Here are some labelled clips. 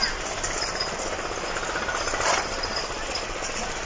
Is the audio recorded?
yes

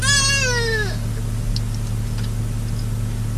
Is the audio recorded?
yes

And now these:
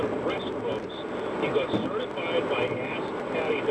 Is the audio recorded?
yes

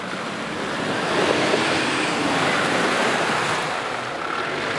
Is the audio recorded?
yes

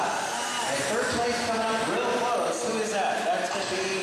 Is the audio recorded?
yes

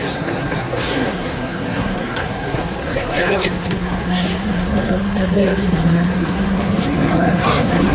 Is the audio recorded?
no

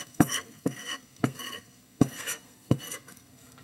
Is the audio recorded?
no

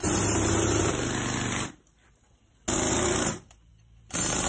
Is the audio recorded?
yes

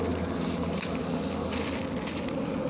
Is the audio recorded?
yes